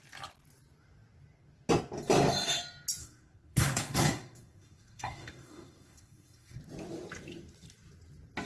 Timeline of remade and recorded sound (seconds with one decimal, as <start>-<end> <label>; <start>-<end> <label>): 0.0-3.0 recorded; 3.0-6.6 remade; 6.6-8.5 recorded